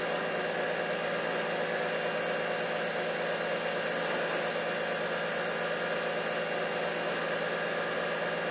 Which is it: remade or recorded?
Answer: recorded